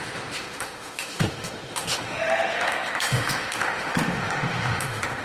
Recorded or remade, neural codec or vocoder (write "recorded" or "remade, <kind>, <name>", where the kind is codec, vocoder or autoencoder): remade, autoencoder, DAC-VAE